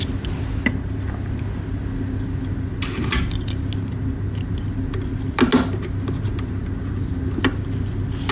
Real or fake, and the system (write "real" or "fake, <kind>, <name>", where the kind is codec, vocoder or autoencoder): real